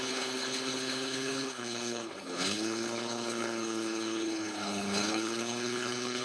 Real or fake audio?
fake